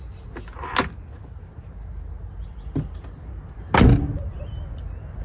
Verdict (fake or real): real